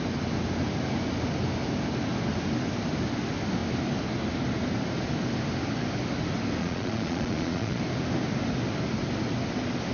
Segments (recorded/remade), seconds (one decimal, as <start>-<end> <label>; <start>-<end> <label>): 0.0-6.6 recorded; 6.6-7.8 remade; 7.8-9.9 recorded